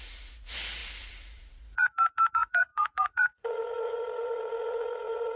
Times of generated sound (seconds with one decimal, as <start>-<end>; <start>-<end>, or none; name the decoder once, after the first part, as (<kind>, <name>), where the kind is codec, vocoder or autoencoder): 0.0-5.4 (vocoder, Vocos)